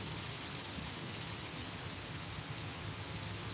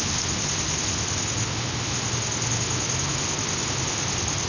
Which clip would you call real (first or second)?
second